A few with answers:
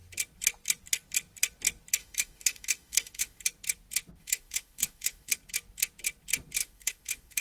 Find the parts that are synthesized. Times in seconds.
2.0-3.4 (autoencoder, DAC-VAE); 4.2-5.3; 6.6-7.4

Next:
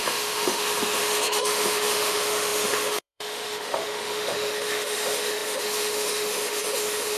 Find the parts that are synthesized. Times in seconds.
0.0-7.2 (autoencoder, DAC-VAE)

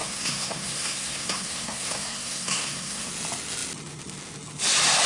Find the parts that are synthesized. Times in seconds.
0.0-3.1 (codec, SNAC)

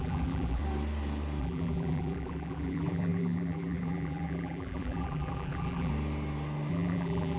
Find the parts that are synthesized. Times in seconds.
0.0-0.6 (vocoder, BigVGAN v2); 1.4-5.9; 6.7-7.4

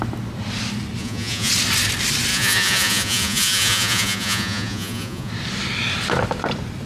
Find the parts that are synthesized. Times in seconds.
1.0-1.5 (vocoder, Vocos); 2.3-5.3

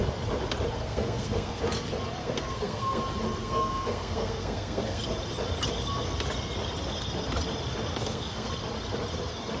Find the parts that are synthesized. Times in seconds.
0.8-1.6 (codec, SNAC); 2.2-3.0; 3.4-5.0; 7.9-8.5

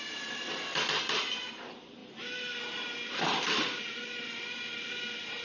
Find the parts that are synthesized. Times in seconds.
2.0-3.9 (vocoder, BigVGAN v2)